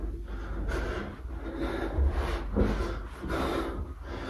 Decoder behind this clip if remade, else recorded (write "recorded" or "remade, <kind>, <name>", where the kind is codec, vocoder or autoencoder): recorded